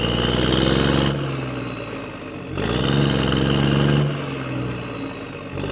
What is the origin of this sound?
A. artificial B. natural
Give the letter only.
B